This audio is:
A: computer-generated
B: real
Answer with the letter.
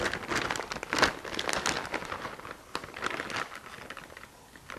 B